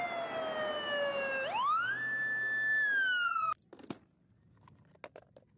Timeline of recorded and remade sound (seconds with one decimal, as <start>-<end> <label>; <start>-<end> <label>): 0.0-5.6 recorded